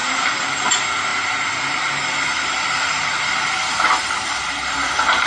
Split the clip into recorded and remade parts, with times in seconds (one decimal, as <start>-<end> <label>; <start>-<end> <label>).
0.0-1.1 remade; 1.1-4.3 recorded; 4.3-5.3 remade